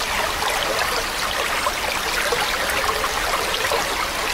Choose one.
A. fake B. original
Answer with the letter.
B